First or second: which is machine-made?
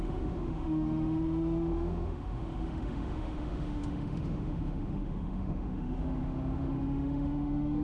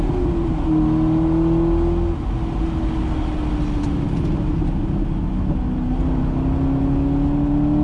first